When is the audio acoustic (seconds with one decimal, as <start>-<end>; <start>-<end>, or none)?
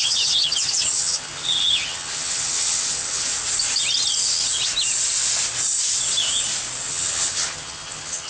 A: 3.3-6.9